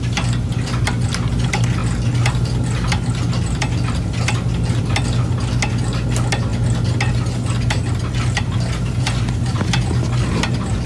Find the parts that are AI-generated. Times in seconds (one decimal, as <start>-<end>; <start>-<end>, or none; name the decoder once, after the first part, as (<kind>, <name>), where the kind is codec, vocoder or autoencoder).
none